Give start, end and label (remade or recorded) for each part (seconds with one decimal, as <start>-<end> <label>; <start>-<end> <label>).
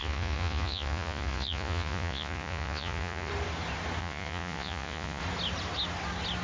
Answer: 0.0-3.3 remade; 3.3-4.0 recorded; 4.0-5.2 remade; 5.2-6.4 recorded